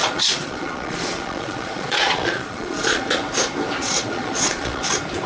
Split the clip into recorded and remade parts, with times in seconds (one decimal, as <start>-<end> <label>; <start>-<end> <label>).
0.0-3.2 remade; 3.2-3.8 recorded; 3.8-4.8 remade; 4.8-5.3 recorded